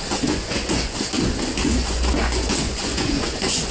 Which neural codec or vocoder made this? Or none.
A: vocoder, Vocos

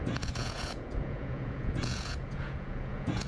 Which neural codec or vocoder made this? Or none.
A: vocoder, Vocos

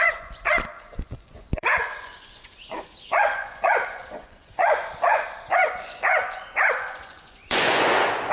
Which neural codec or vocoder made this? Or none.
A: vocoder, Vocos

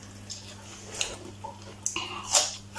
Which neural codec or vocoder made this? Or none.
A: none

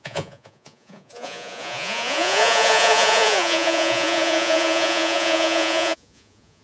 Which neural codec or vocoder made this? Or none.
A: vocoder, Vocos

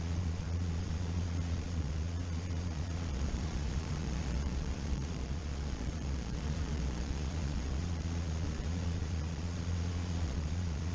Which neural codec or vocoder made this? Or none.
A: vocoder, Vocos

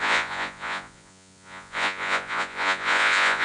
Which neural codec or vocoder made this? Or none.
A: vocoder, Vocos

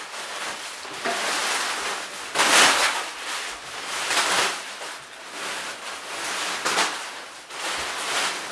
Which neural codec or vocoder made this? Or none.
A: none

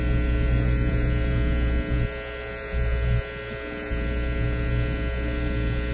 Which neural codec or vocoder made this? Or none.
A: none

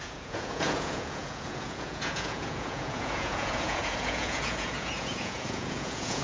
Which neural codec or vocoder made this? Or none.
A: vocoder, Vocos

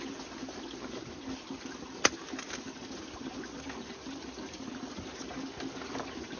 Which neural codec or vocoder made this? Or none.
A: none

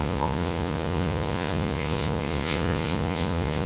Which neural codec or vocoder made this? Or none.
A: vocoder, Vocos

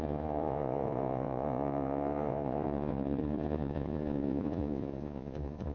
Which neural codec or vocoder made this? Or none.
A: vocoder, Vocos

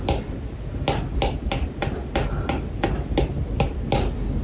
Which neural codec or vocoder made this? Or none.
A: none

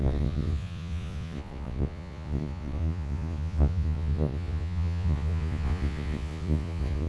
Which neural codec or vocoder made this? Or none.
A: vocoder, Vocos